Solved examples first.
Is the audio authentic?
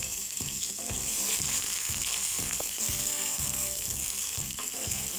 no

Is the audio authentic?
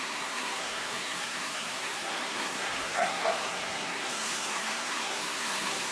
no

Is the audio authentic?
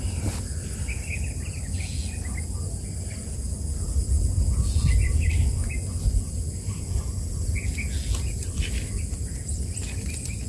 yes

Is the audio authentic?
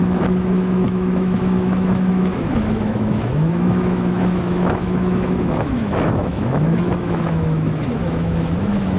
no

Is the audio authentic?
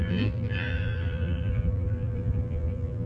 no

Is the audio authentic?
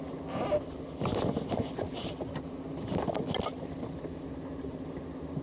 yes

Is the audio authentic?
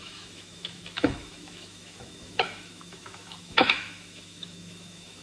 no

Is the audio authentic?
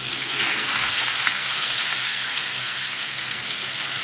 no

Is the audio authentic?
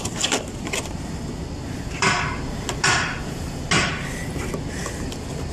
yes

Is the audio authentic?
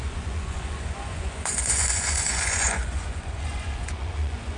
no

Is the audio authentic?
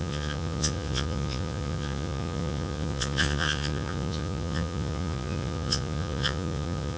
no